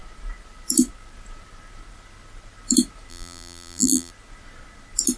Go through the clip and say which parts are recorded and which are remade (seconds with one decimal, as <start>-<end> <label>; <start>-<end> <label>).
0.0-3.1 recorded; 3.1-4.1 remade; 4.1-5.2 recorded